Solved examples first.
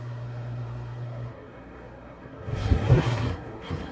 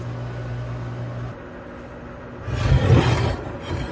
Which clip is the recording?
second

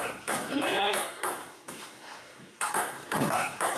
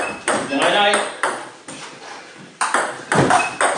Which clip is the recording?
second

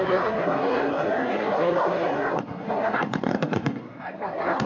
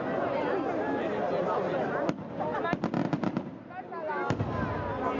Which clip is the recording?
second